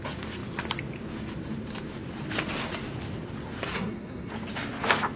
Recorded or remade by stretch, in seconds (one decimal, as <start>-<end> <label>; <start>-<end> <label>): 0.0-3.7 recorded; 3.7-4.3 remade; 4.3-5.2 recorded